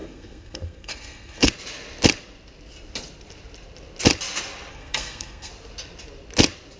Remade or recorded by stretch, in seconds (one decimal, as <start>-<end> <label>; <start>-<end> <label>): 0.0-1.5 remade; 1.5-4.7 recorded; 4.7-5.5 remade; 5.5-6.8 recorded